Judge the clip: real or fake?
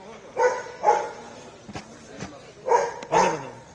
real